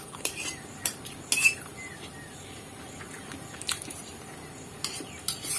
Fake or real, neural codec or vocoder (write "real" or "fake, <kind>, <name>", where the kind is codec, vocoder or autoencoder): fake, vocoder, BigVGAN v2